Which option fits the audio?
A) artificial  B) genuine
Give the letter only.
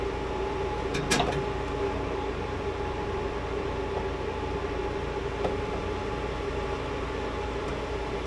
B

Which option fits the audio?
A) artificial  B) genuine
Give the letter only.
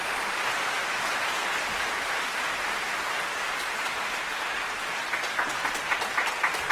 B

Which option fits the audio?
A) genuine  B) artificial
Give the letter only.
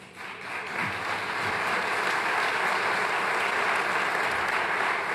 A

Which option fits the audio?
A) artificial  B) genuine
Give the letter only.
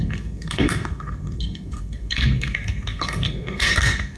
A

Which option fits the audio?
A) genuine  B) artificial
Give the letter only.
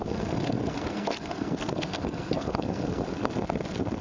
B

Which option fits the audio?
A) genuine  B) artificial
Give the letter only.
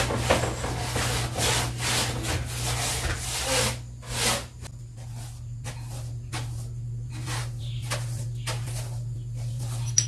A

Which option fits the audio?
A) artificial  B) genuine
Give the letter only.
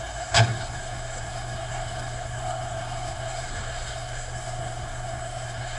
A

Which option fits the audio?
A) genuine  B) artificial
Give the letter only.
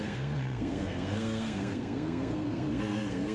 B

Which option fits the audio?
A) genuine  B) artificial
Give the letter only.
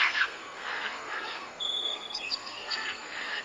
B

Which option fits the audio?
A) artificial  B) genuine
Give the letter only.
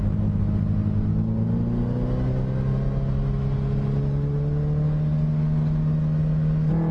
B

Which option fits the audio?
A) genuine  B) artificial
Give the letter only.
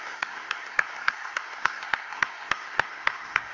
B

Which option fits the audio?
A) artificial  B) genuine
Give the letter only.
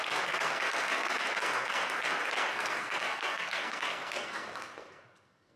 A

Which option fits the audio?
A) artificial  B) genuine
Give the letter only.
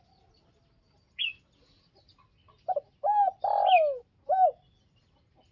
B